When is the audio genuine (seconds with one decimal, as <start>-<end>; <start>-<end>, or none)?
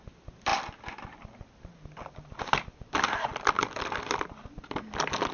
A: 0.0-5.3